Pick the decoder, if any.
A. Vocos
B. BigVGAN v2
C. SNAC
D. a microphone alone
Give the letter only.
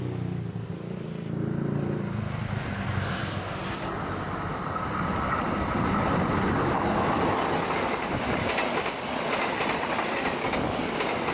D